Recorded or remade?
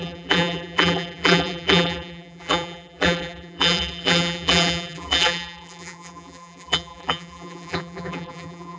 remade